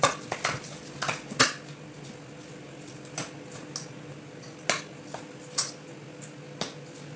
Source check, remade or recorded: recorded